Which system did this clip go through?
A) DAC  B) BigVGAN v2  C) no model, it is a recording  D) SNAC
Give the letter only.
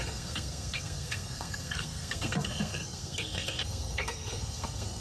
D